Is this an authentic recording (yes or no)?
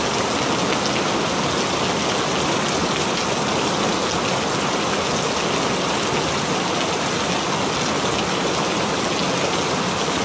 yes